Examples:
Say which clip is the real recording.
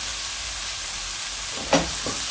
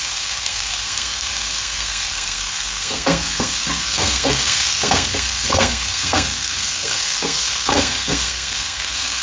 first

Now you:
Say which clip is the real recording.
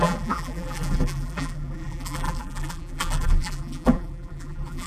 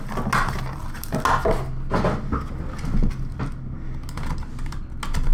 second